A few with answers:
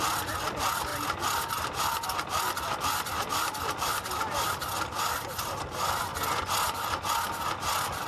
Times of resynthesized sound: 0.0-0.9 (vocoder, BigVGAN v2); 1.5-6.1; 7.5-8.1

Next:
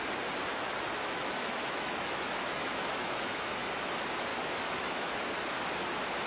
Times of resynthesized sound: 0.5-3.9 (autoencoder, DAC-VAE); 4.3-5.1